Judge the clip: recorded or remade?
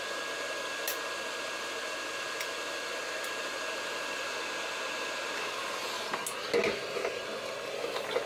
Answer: recorded